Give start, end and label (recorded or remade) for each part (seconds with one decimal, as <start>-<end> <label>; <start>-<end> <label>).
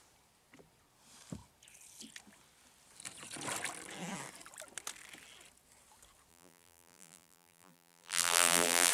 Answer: 0.0-6.3 recorded; 6.3-8.9 remade